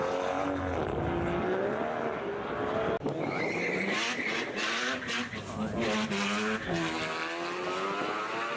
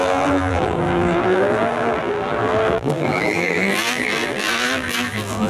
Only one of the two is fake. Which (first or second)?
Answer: second